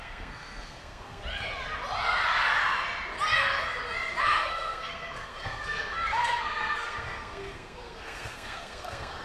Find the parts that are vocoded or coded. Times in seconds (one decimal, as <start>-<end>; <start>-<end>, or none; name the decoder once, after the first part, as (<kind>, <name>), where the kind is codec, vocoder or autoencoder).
0.0-1.2 (codec, SNAC); 4.2-9.2